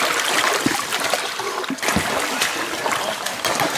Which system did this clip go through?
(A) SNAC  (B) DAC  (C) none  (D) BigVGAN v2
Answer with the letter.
D